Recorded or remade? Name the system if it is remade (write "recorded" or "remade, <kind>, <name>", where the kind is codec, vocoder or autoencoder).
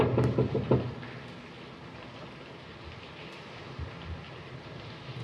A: recorded